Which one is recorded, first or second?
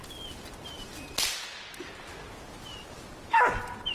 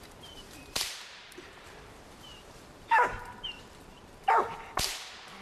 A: first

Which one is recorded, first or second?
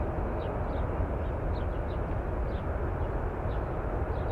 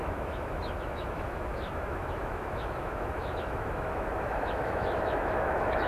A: first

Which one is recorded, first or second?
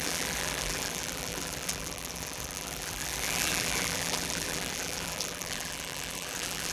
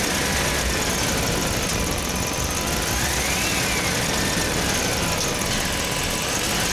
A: second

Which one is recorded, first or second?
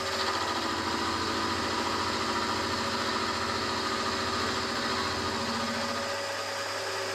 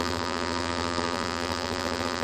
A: first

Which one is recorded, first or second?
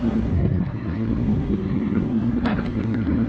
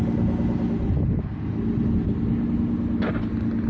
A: second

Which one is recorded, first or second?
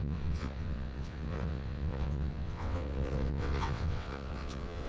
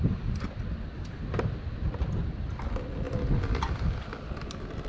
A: second